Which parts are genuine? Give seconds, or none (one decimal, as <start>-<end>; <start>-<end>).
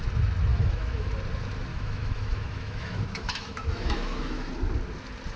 0.0-0.5; 1.1-1.7; 4.5-5.4